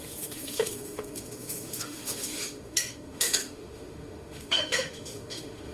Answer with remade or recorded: remade